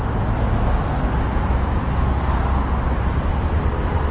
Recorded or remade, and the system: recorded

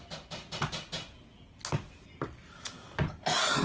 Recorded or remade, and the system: recorded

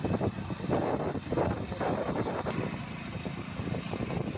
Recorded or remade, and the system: recorded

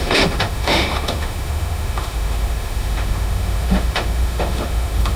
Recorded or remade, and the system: remade, autoencoder, DAC-VAE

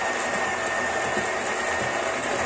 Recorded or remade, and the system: recorded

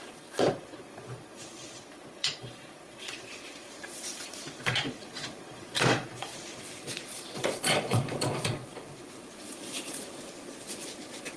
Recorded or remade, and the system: remade, vocoder, Vocos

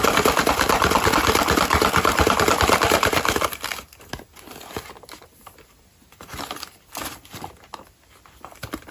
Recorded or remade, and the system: recorded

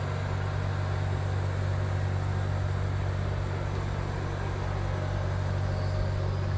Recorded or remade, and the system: recorded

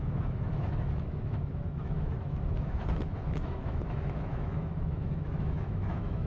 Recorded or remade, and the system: remade, autoencoder, DAC-VAE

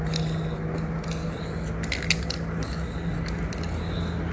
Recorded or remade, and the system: recorded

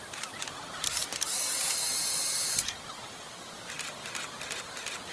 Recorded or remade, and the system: recorded